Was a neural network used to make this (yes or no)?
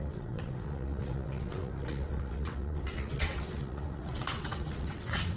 yes